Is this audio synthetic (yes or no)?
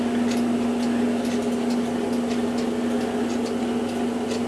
no